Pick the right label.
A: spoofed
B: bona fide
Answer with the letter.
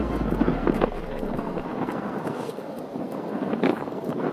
A